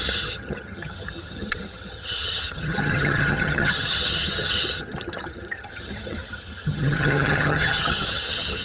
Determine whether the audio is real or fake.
fake